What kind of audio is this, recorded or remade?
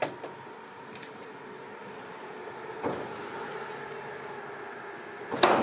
recorded